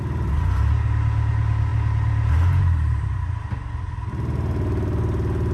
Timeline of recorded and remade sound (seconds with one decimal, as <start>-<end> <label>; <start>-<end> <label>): 0.0-5.5 recorded

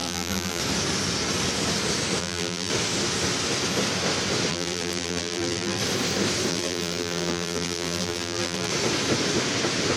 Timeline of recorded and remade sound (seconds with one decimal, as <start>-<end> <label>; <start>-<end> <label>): 0.0-0.6 remade; 0.6-2.2 recorded; 2.2-2.7 remade; 2.7-4.5 recorded; 4.5-5.8 remade; 5.8-6.5 recorded; 6.5-8.7 remade; 8.7-10.0 recorded

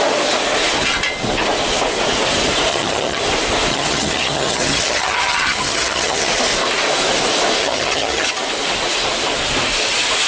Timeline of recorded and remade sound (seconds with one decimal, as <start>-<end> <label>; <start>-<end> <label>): 0.0-2.7 recorded; 2.7-3.2 remade; 3.2-3.7 recorded; 3.7-6.3 remade; 6.3-7.6 recorded; 7.6-8.3 remade; 8.3-10.3 recorded

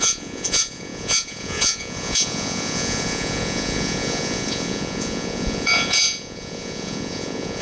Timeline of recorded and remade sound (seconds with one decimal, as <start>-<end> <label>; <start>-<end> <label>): 0.0-7.6 remade

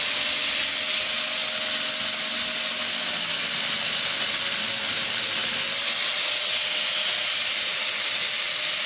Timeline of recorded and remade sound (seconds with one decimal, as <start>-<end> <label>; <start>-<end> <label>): 0.0-8.9 recorded

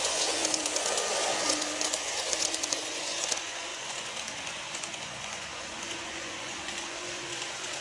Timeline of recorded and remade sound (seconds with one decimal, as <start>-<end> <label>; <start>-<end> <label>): 0.0-7.8 remade

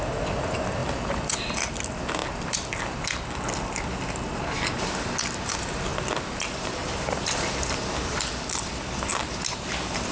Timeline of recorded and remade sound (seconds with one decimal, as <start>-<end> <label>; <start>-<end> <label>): 0.0-10.1 recorded

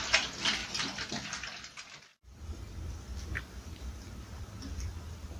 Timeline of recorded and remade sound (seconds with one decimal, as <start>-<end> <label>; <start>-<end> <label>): 0.0-5.4 recorded